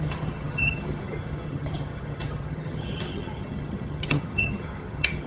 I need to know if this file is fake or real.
fake